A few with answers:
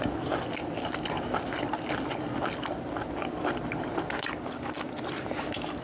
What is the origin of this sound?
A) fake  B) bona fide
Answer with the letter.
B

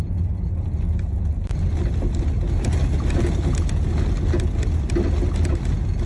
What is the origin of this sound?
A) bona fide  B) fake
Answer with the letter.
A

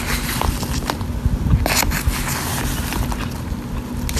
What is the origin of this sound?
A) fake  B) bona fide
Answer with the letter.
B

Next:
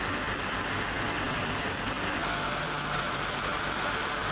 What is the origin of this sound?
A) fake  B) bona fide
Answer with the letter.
B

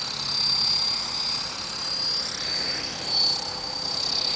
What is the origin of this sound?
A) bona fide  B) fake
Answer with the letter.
A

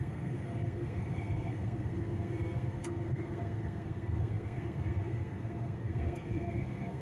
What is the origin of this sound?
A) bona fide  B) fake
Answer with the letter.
B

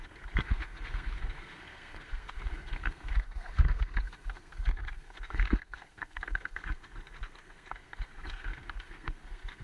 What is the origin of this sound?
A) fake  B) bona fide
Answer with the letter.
A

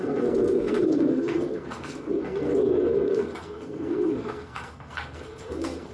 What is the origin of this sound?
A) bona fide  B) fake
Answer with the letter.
B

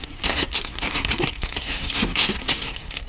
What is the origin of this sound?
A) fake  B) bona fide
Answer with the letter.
A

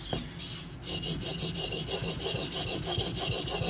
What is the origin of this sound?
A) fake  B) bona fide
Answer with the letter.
B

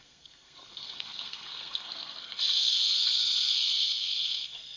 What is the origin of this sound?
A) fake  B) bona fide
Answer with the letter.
A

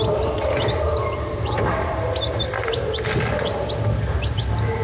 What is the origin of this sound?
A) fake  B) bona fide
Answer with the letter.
B